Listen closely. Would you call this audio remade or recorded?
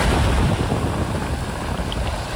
recorded